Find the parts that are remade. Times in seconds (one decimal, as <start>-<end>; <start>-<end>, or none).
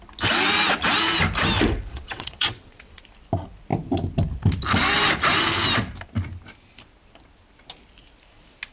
1.9-3.0